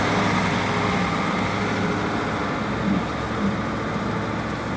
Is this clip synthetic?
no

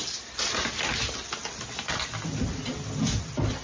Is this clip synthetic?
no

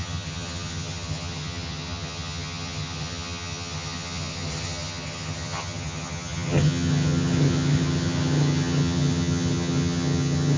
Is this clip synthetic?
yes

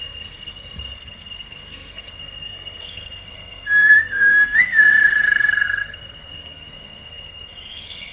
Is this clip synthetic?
yes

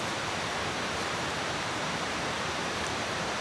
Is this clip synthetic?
yes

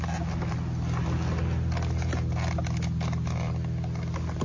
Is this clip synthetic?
no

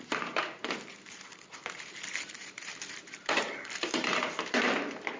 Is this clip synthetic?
yes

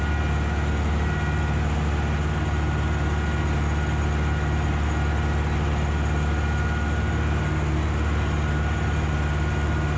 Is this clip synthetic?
no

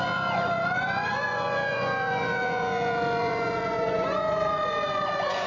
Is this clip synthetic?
yes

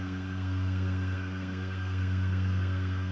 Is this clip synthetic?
yes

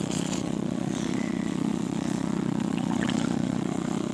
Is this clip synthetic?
yes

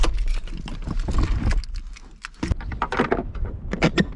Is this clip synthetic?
no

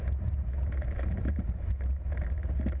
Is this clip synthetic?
no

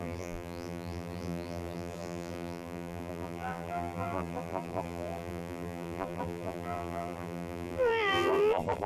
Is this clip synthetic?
yes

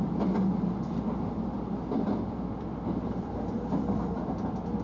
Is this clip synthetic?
yes